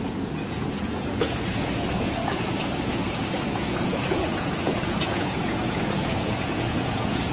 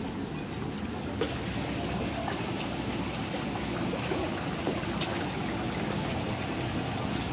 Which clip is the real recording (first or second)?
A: second